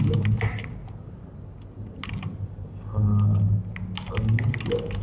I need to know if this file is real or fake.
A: real